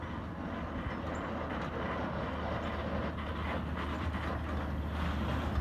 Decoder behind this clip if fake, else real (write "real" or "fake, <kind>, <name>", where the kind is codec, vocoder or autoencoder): real